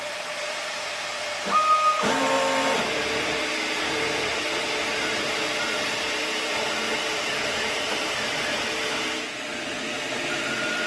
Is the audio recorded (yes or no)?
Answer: no